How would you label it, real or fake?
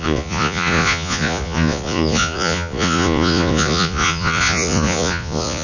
fake